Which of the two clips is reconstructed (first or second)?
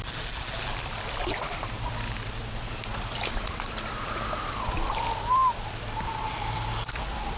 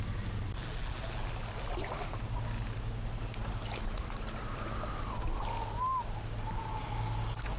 first